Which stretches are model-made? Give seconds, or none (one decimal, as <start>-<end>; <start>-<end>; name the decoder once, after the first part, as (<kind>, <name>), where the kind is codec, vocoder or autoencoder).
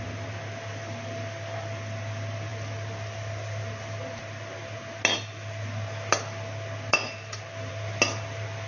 none